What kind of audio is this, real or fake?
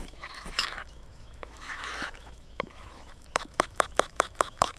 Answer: fake